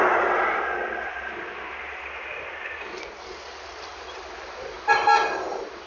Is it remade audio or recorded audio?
recorded